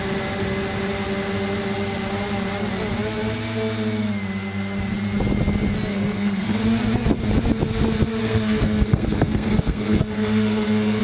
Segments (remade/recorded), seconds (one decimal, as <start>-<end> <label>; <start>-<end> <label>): 0.0-5.9 recorded; 5.9-6.6 remade; 6.6-8.2 recorded; 8.2-11.0 remade